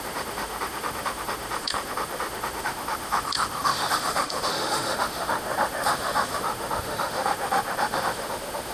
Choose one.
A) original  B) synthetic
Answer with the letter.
B